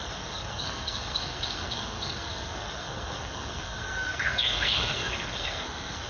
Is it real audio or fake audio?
fake